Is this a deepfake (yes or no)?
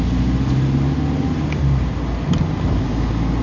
no